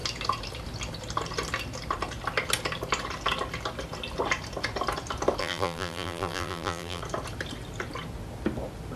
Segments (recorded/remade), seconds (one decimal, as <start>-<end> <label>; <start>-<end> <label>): 0.0-5.4 recorded; 5.4-7.0 remade; 7.0-9.0 recorded